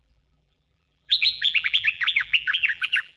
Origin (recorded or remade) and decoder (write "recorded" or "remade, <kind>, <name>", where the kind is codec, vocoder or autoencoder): remade, vocoder, BigVGAN v2